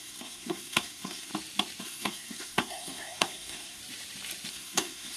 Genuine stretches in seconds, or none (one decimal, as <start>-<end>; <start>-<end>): 1.3-1.8; 3.8-4.5